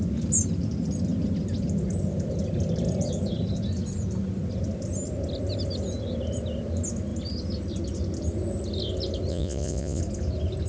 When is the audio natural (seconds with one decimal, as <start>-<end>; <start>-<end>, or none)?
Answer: 0.0-9.3; 10.0-10.7